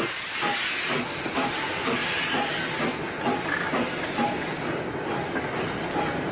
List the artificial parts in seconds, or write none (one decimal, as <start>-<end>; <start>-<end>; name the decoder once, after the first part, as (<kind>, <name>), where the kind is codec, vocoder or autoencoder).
none